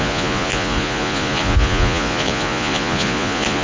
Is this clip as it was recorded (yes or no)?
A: no